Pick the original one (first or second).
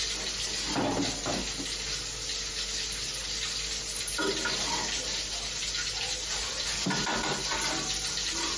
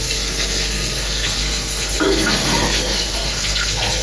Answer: first